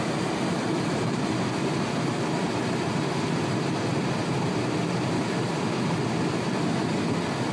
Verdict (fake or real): fake